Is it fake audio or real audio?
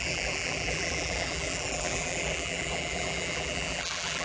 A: fake